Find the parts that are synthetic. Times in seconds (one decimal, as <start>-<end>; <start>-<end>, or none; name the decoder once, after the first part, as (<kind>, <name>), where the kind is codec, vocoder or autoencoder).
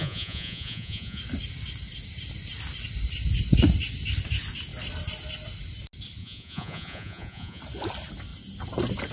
0.0-1.2 (vocoder, Vocos); 6.2-7.6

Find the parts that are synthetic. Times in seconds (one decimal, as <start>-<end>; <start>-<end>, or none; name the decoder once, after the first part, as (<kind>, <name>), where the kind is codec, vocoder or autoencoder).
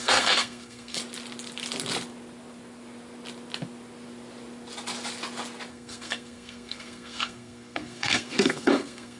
0.0-1.0 (codec, SNAC); 5.7-9.2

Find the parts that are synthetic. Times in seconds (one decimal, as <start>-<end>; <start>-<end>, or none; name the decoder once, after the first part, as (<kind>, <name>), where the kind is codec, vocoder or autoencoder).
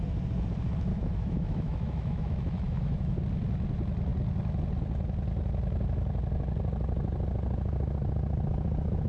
0.9-3.2 (autoencoder, DAC-VAE)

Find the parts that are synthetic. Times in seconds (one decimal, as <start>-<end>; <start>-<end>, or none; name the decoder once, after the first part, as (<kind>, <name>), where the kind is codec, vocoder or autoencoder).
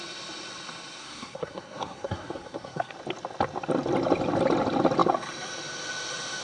1.0-2.9 (codec, SNAC)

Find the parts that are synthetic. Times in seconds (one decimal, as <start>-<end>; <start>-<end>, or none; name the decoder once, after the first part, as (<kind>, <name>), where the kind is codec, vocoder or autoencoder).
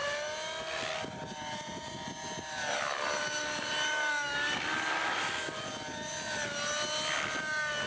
none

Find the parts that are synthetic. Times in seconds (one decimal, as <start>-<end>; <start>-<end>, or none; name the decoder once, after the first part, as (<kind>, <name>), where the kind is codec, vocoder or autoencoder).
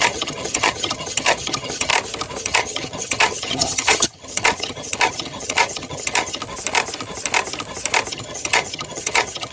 0.0-1.9 (vocoder, HiFi-GAN); 2.4-6.4; 8.1-9.5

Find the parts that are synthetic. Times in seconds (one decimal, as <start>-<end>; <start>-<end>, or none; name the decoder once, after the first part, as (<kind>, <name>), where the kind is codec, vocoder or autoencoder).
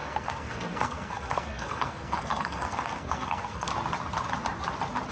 0.0-3.7 (codec, SNAC)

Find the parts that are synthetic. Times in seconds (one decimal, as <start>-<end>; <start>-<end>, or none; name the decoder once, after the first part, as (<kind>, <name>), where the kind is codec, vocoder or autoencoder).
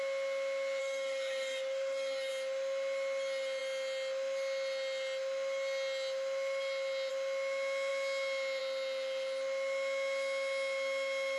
0.8-2.3 (codec, DAC)